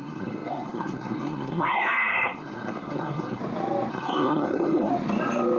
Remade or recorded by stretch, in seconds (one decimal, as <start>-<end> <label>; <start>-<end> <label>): 0.0-3.4 remade; 3.4-3.9 recorded; 3.9-4.9 remade; 4.9-5.6 recorded